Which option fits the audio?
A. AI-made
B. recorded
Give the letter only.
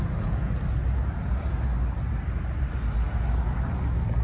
B